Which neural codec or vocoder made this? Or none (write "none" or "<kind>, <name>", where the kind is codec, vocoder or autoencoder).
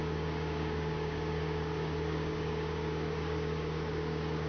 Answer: codec, DAC